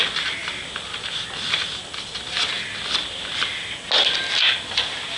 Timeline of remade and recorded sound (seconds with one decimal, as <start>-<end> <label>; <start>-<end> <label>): 0.0-5.2 recorded